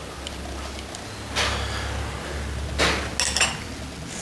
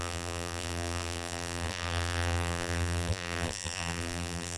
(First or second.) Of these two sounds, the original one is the first